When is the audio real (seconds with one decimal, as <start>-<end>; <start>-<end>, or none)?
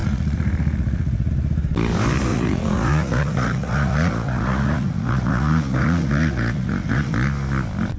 1.3-2.3; 7.1-8.0